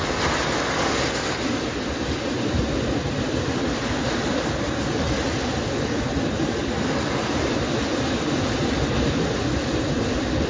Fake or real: real